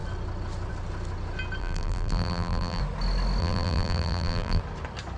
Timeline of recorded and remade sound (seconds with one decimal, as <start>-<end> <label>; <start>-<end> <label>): 0.0-1.6 recorded; 1.6-2.8 remade; 2.8-3.4 recorded; 3.4-4.6 remade; 4.6-5.2 recorded